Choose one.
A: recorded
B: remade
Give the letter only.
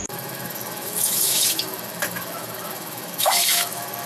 B